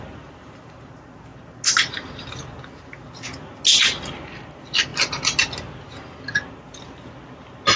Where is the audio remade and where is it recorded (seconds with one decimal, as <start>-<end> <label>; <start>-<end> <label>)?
0.0-7.8 recorded